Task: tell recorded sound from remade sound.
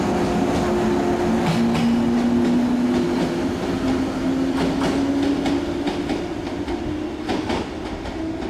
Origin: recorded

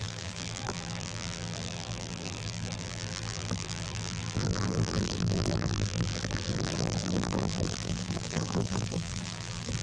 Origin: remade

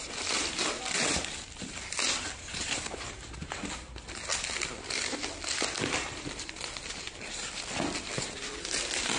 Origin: recorded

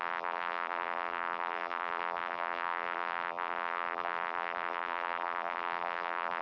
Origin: remade